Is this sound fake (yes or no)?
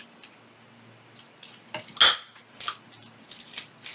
no